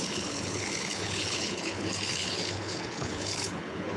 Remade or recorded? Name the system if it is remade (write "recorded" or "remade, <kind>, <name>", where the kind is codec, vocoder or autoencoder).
remade, codec, HILCodec